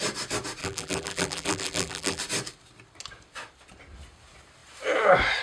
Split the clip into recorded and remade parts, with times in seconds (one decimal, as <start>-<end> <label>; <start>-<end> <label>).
0.0-0.6 recorded; 0.6-2.2 remade; 2.2-5.4 recorded